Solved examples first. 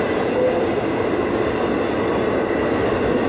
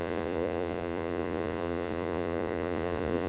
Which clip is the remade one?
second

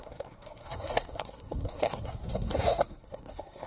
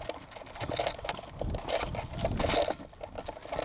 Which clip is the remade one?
first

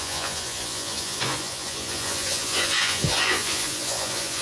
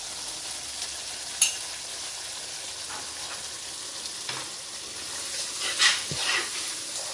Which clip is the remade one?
first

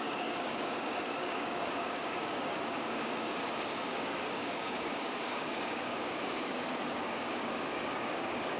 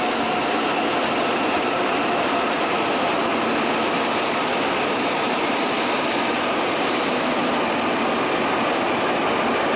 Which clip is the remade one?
first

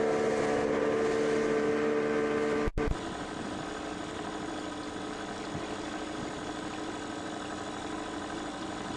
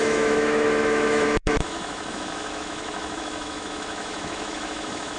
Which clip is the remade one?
second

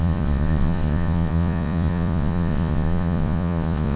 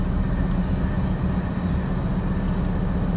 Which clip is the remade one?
first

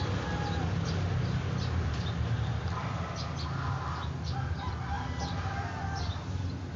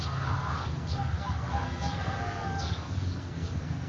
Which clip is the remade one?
second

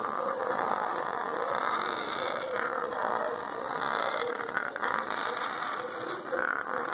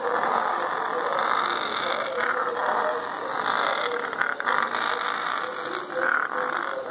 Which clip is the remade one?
first